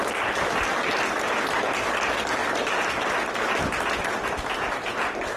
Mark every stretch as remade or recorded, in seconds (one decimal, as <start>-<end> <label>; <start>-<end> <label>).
0.0-2.4 recorded; 2.4-3.1 remade; 3.1-5.4 recorded